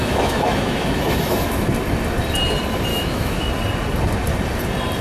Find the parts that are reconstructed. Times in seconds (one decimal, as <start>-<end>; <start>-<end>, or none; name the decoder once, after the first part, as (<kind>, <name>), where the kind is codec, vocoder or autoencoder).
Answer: 0.0-1.7 (autoencoder, DAC-VAE); 2.9-3.5